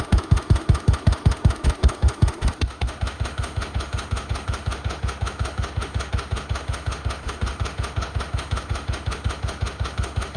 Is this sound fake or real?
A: fake